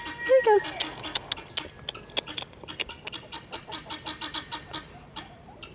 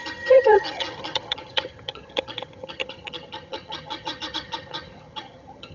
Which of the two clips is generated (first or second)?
second